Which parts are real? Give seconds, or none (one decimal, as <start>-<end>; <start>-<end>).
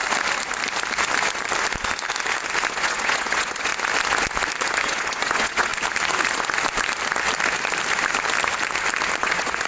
0.0-2.7; 3.7-4.7; 5.7-9.2